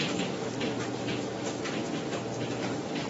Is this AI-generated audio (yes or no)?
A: no